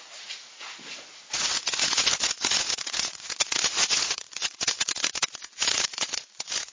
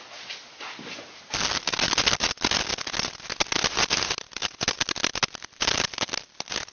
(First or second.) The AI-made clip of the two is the first